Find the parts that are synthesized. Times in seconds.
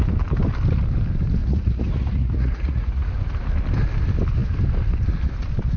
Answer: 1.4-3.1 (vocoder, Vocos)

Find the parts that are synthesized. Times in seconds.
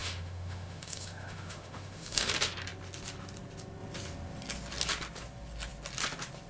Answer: 0.0-2.3 (autoencoder, DAC-VAE)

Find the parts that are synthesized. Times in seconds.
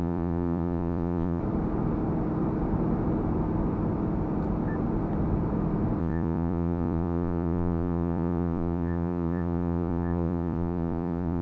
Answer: 0.0-1.4 (vocoder, Vocos); 6.0-11.4